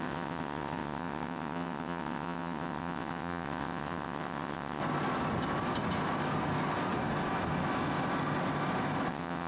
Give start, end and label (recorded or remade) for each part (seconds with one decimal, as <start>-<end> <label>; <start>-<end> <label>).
0.0-4.8 remade; 4.8-9.1 recorded; 9.1-9.5 remade